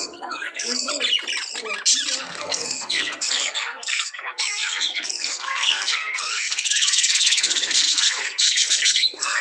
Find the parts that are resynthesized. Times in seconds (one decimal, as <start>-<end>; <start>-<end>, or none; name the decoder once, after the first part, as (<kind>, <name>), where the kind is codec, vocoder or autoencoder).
0.0-0.9 (codec, SNAC); 2.2-9.4